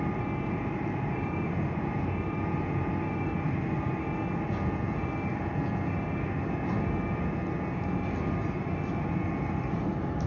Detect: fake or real real